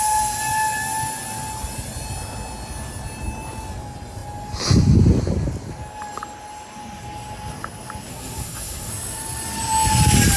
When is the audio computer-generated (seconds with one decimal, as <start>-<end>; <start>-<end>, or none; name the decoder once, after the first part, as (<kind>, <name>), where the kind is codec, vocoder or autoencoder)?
8.1-8.9 (codec, SNAC)